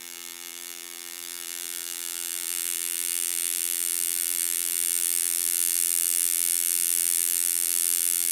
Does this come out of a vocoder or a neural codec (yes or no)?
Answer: yes